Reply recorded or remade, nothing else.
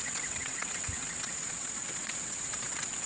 remade